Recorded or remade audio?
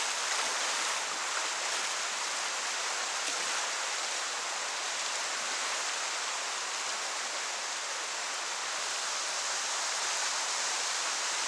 recorded